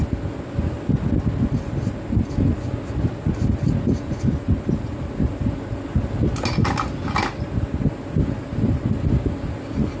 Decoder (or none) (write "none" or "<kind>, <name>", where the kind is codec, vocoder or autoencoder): none